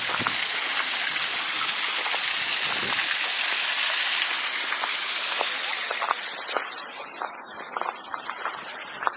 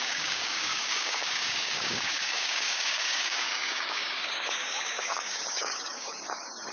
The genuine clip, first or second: first